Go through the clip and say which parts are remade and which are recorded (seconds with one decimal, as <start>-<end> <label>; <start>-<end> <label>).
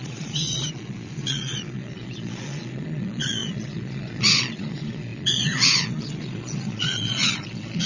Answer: 0.0-7.9 remade